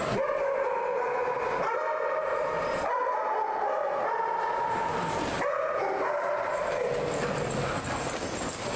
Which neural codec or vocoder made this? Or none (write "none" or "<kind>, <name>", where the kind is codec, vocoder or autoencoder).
none